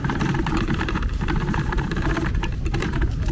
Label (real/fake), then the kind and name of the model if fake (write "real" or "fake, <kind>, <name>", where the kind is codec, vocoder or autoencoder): fake, vocoder, BigVGAN v2